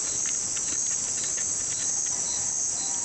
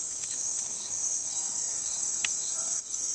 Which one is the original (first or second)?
first